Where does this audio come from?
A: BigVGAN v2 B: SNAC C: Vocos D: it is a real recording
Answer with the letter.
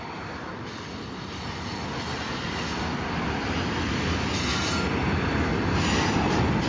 D